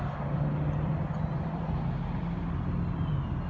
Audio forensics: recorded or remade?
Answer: recorded